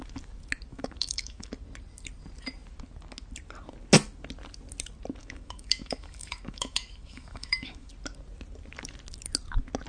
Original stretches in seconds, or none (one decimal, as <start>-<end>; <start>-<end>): 0.0-0.7; 1.5-5.2; 7.9-9.9